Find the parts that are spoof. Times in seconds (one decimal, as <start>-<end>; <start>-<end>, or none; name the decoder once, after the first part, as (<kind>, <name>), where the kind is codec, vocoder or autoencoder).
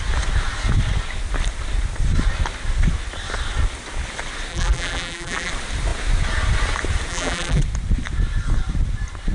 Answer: 4.5-5.5 (vocoder, BigVGAN v2); 7.1-7.6